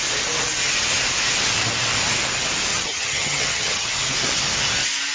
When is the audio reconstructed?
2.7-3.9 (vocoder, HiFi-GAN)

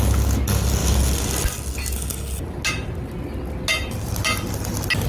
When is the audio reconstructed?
none

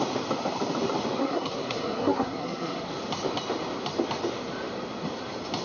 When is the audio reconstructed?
1.2-2.9 (codec, SNAC)